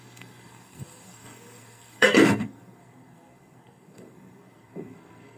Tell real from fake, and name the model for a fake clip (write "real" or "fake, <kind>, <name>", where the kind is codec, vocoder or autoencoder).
fake, codec, SNAC